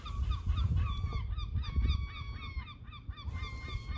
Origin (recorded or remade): recorded